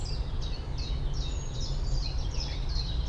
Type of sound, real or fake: real